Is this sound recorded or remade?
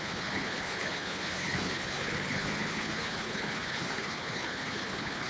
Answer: remade